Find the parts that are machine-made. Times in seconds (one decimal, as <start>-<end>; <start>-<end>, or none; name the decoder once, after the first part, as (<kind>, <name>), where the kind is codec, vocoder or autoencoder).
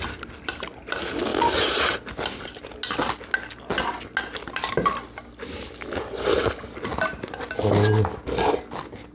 none